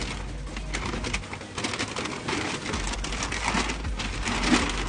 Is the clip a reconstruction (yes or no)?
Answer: no